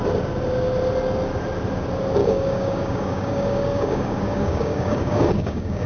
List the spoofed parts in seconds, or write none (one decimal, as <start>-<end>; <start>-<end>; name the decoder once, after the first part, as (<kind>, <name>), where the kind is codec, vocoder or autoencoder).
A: 2.2-5.9 (codec, DAC)